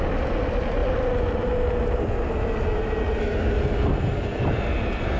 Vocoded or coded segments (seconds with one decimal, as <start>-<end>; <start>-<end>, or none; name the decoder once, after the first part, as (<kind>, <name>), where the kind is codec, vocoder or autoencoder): none